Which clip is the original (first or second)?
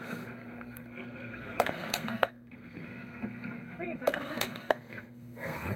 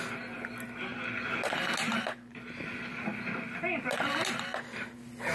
second